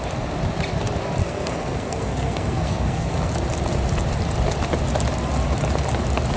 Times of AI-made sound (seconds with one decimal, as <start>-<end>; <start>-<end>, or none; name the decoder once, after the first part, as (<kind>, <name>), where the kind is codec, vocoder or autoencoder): 1.2-3.3 (codec, SNAC)

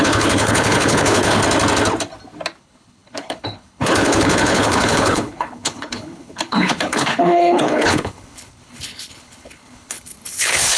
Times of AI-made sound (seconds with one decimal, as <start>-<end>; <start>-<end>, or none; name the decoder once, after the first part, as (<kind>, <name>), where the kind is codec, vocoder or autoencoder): 0.0-1.4 (codec, HILCodec); 2.6-10.8